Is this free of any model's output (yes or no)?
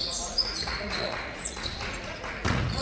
no